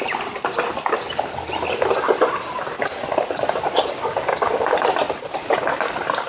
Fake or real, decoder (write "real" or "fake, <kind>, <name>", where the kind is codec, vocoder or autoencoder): real